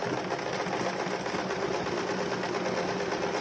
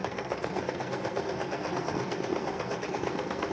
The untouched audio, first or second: first